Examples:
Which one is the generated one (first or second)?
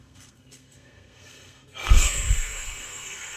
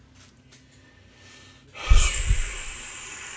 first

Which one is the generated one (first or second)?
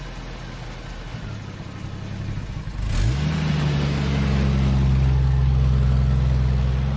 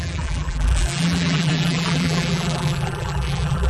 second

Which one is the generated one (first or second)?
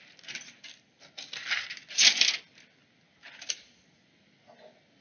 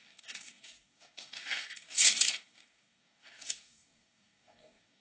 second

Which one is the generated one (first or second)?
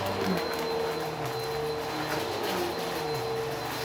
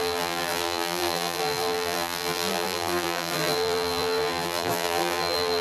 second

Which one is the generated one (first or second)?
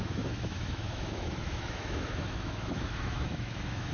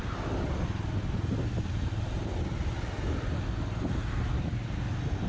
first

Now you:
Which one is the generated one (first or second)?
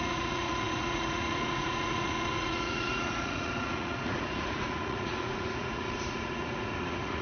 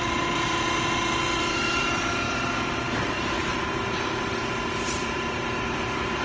first